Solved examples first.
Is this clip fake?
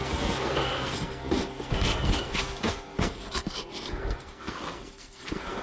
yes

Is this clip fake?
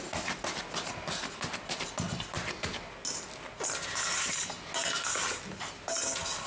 no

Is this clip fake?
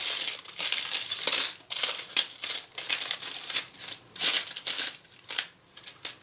no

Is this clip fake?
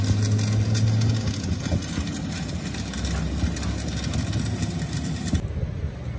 no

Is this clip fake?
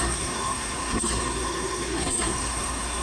yes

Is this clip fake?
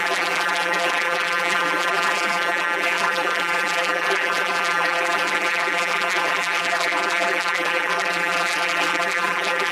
yes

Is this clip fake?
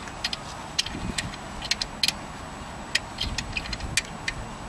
no